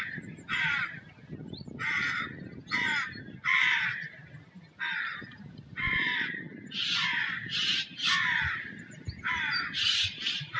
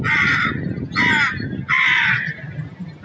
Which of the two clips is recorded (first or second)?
second